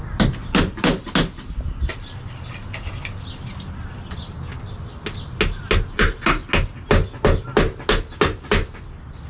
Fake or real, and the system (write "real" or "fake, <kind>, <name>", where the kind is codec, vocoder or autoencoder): real